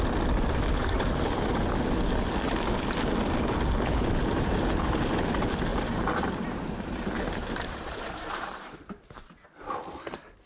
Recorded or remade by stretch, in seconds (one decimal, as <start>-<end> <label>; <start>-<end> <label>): 0.0-5.7 recorded; 5.7-9.2 remade; 9.2-10.5 recorded